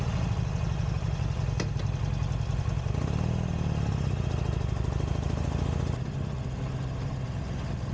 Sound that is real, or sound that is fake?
real